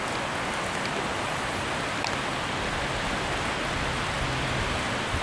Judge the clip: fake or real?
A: real